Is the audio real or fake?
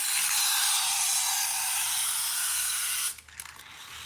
real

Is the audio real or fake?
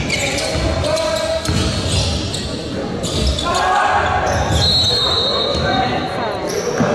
real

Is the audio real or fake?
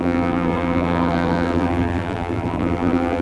fake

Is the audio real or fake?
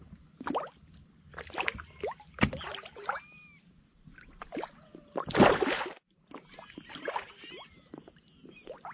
real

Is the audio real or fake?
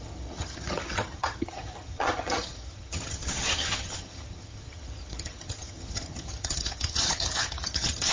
fake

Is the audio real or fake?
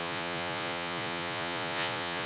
fake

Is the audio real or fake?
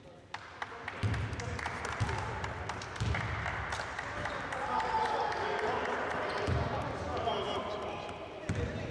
real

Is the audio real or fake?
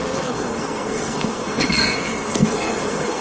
fake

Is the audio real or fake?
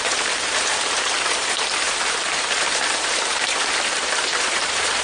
fake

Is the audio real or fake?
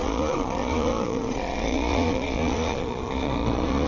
fake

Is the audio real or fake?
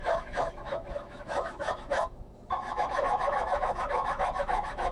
fake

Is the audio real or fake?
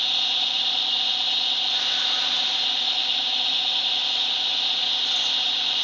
real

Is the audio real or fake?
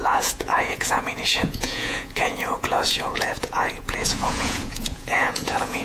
fake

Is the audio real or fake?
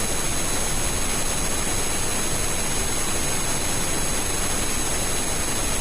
real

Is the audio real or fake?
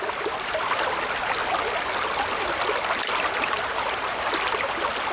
real